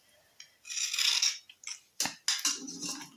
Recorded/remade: recorded